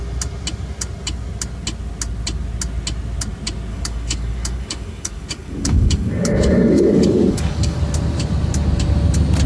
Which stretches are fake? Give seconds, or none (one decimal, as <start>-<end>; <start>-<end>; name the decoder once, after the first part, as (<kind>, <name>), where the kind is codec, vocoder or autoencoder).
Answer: 3.7-7.8 (codec, DAC)